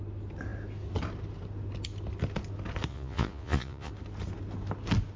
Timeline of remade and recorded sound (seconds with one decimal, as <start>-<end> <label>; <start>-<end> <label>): 0.0-2.9 recorded; 2.9-3.9 remade; 3.9-5.2 recorded